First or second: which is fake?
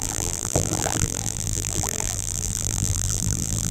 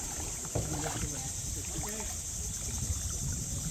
first